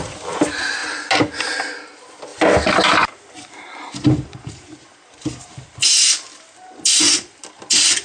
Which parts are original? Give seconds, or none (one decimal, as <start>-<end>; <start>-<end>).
0.0-8.0